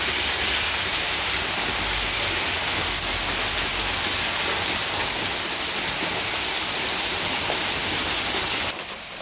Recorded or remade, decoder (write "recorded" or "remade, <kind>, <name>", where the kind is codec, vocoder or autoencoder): recorded